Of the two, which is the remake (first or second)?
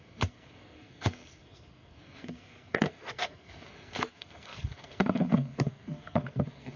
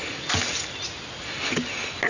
first